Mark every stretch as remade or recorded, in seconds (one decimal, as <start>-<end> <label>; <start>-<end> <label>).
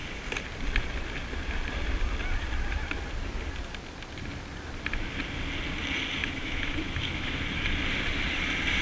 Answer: 0.0-6.2 recorded; 6.2-7.4 remade; 7.4-8.8 recorded